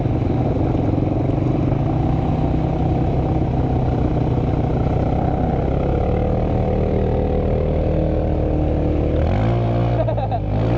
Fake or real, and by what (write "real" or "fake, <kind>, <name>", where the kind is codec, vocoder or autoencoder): real